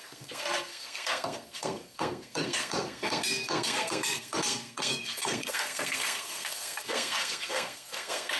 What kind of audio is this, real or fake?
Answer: fake